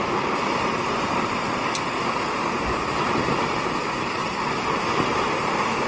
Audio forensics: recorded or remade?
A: remade